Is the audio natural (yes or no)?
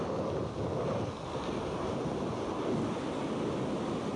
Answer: yes